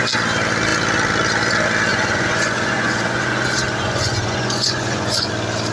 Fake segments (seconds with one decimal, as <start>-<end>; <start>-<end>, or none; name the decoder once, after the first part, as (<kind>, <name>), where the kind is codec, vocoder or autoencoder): 1.9-5.3 (vocoder, Vocos)